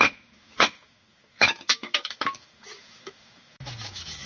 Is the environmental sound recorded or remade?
remade